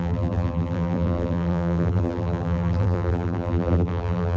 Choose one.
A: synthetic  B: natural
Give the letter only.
A